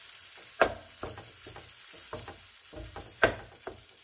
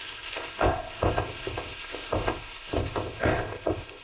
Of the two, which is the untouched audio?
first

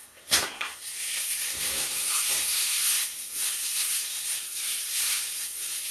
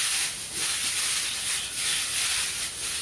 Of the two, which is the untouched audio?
second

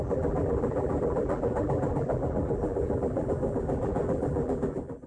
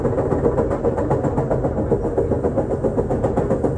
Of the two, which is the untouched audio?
second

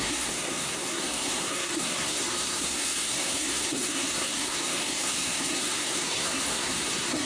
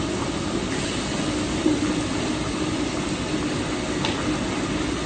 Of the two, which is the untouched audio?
second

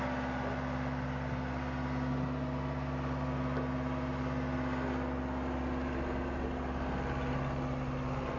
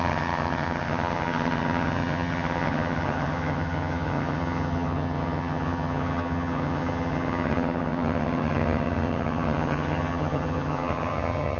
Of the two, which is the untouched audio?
first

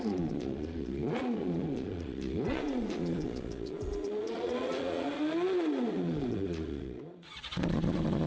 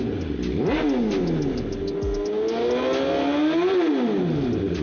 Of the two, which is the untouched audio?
second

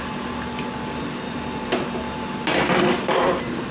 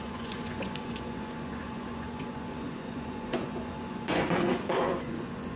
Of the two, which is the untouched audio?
first